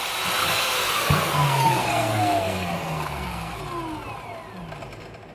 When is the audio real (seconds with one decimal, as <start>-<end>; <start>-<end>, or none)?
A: 0.0-0.4; 3.6-5.3